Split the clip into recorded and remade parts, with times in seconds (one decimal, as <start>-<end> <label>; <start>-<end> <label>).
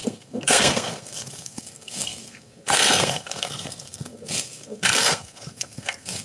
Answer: 0.0-6.2 remade